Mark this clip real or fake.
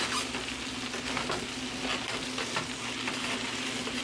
real